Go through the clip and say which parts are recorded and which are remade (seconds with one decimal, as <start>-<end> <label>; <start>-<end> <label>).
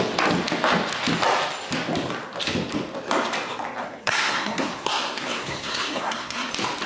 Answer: 0.0-3.8 recorded; 3.8-6.5 remade; 6.5-6.9 recorded